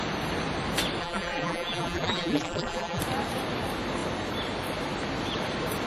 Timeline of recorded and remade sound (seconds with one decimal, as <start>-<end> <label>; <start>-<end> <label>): 0.0-1.0 recorded; 1.0-3.0 remade; 3.0-5.9 recorded